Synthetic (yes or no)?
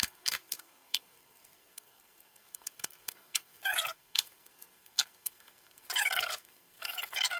yes